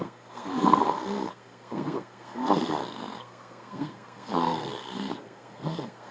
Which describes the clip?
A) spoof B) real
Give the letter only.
A